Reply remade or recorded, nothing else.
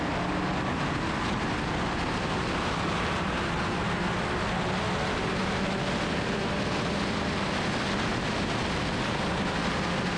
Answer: recorded